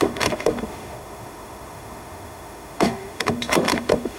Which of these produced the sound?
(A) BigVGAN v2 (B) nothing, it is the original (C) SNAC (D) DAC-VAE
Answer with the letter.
D